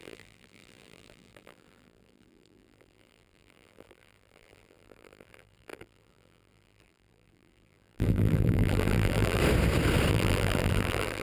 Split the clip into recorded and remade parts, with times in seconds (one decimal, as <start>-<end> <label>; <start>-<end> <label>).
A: 0.0-9.4 remade; 9.4-10.1 recorded; 10.1-11.2 remade

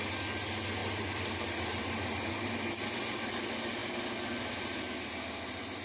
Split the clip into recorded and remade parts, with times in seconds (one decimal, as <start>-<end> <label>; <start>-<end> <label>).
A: 0.0-0.8 recorded; 0.8-2.5 remade; 2.5-5.8 recorded

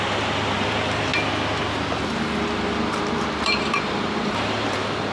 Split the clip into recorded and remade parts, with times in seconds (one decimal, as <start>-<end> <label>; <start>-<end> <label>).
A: 0.0-1.1 remade; 1.1-3.4 recorded; 3.4-5.1 remade

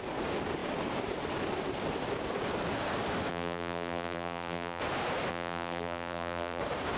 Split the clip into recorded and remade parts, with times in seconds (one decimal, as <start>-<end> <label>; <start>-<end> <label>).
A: 0.0-3.3 recorded; 3.3-4.8 remade; 4.8-5.3 recorded; 5.3-6.6 remade; 6.6-7.0 recorded

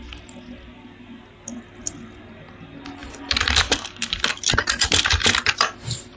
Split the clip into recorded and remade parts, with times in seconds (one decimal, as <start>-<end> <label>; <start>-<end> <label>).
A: 0.0-6.2 remade

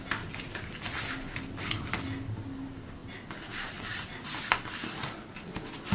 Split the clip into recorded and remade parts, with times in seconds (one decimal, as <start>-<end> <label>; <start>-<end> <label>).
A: 0.0-5.9 recorded